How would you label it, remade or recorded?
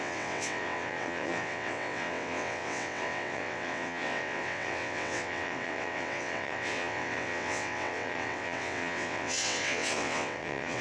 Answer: remade